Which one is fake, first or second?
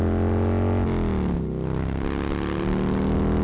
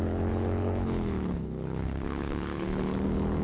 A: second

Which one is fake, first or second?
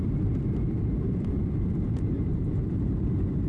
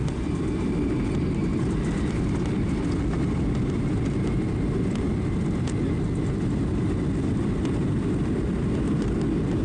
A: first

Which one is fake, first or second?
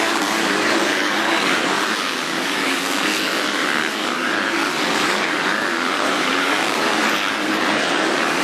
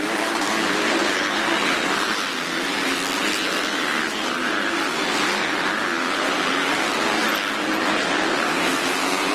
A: first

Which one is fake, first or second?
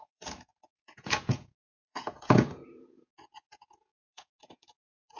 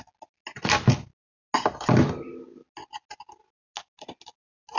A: first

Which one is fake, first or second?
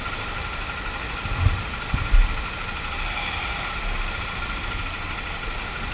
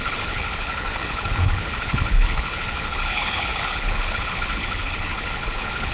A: second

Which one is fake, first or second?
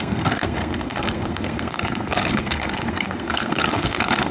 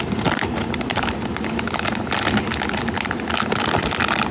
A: first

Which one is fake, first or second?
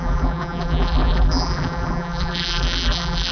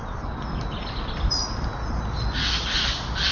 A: first